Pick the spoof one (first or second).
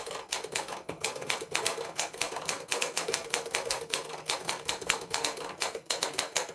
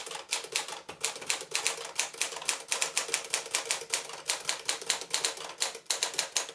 first